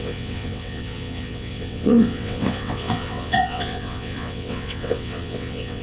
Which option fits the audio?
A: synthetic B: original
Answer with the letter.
A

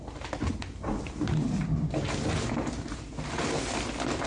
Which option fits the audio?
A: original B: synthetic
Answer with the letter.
A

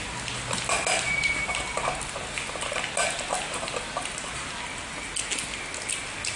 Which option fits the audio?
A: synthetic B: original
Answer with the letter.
B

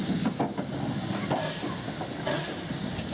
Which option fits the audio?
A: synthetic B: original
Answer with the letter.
B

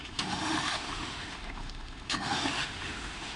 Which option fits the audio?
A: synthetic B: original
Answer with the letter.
A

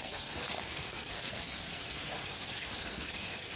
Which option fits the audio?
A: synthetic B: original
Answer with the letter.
A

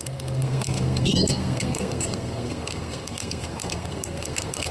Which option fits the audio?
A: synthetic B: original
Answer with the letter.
A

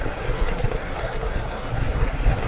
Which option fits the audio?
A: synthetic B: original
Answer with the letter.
A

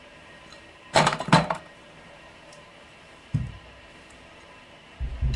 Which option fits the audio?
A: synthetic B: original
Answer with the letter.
A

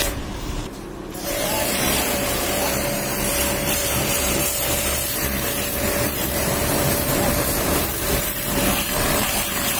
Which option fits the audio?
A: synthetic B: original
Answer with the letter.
A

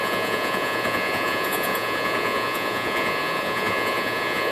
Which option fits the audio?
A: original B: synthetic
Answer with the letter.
B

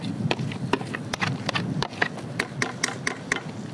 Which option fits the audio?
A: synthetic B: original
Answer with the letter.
B